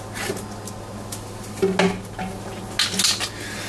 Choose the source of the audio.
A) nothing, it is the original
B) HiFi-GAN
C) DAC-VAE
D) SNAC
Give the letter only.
A